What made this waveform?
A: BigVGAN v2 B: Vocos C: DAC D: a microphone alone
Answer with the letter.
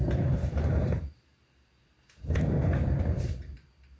A